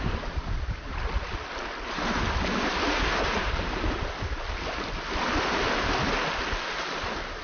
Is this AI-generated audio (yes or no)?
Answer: no